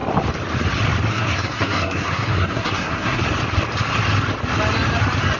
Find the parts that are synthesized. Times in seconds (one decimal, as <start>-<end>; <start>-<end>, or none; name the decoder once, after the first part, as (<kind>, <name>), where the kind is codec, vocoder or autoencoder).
1.1-3.2 (codec, SNAC)